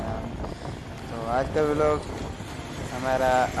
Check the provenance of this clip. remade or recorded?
recorded